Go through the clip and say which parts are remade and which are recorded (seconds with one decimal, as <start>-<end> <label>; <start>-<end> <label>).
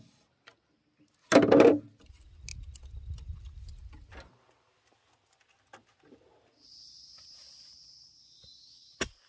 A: 0.0-9.3 recorded